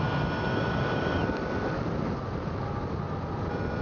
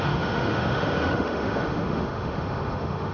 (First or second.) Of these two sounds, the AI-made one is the second